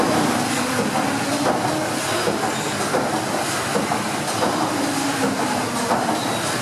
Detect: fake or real real